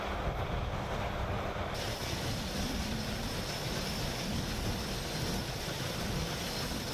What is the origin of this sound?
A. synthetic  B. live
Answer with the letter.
B